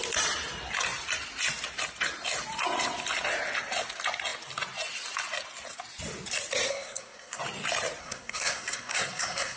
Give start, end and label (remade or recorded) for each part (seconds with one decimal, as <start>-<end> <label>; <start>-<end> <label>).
0.0-6.7 recorded; 6.7-7.4 remade; 7.4-8.0 recorded; 8.0-9.6 remade

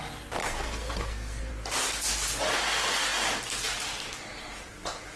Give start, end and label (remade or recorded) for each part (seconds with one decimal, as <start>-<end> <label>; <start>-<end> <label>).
0.0-0.4 recorded; 0.4-1.5 remade; 1.5-5.2 recorded